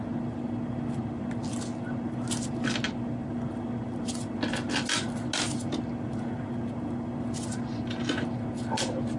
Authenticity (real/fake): real